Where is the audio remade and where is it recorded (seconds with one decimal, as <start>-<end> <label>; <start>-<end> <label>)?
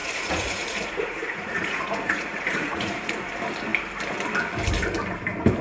0.0-3.3 remade; 3.3-5.6 recorded